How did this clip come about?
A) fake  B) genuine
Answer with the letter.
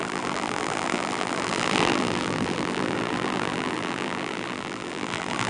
A